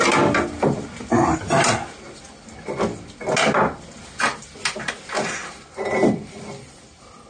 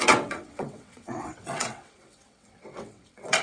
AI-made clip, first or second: second